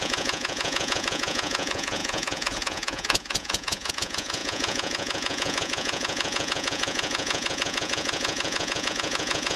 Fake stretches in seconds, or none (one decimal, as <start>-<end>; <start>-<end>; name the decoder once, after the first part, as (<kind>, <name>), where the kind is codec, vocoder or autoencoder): 0.0-9.6 (vocoder, Vocos)